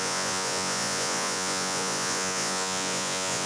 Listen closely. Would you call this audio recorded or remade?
remade